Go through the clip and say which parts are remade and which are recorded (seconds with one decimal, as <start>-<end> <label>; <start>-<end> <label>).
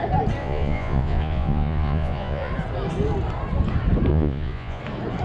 0.0-0.4 recorded; 0.4-2.5 remade; 2.5-4.1 recorded; 4.1-4.8 remade; 4.8-5.2 recorded